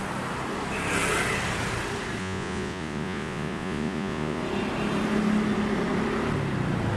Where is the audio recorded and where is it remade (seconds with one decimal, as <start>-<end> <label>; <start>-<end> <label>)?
0.0-2.2 recorded; 2.2-4.4 remade; 4.4-7.0 recorded